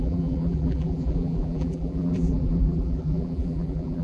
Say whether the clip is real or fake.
fake